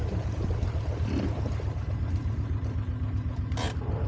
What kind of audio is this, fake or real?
real